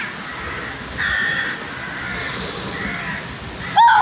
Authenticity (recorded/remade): recorded